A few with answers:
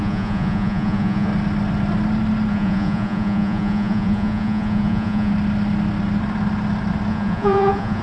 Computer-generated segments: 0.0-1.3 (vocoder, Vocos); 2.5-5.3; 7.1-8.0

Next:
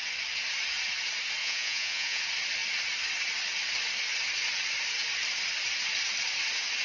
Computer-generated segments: 1.4-2.2 (vocoder, Vocos)

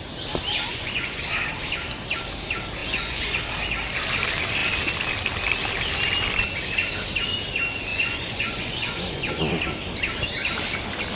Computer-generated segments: 0.7-1.2 (vocoder, Vocos); 2.8-3.4; 7.9-9.4

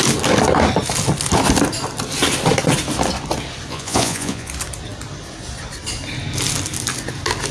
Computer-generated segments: 3.7-4.5 (vocoder, Vocos)

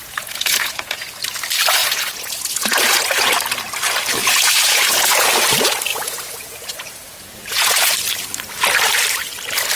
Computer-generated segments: 0.0-1.1 (vocoder, Vocos); 1.8-3.3; 4.2-5.3; 5.9-7.9

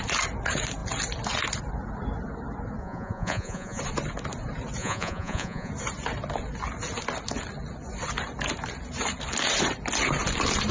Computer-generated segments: 2.8-3.8 (vocoder, Vocos); 4.8-5.7

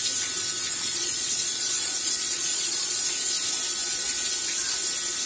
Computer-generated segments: 0.7-2.9 (vocoder, Vocos)

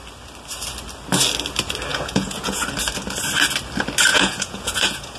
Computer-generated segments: 1.9-2.6 (vocoder, Vocos); 4.1-5.2